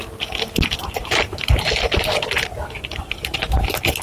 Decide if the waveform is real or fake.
real